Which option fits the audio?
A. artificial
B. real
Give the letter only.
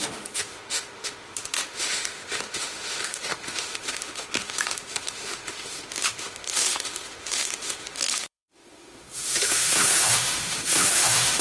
A